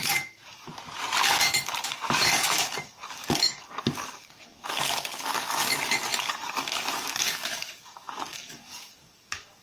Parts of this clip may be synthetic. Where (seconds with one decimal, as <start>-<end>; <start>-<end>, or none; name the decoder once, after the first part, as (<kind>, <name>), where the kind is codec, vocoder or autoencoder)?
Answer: 0.0-0.7 (codec, DAC); 1.3-9.6